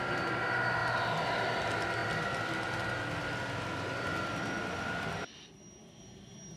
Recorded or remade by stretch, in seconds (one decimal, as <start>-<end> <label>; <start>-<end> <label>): 0.0-6.6 recorded